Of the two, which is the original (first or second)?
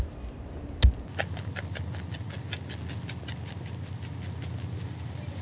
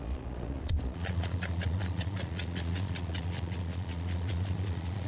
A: first